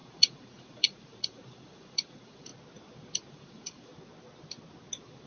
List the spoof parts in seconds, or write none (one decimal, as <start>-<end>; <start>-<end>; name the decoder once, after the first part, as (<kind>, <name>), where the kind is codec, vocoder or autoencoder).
0.0-2.5 (vocoder, Vocos); 3.3-3.9